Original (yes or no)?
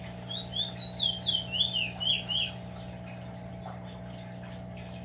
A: yes